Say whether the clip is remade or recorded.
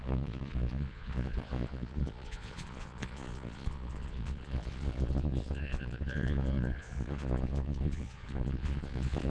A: remade